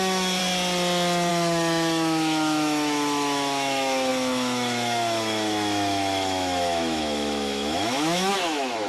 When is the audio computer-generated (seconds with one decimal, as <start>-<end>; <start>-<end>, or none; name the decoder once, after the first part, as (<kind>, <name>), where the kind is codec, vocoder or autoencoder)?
0.0-0.4 (autoencoder, DAC-VAE); 1.3-8.9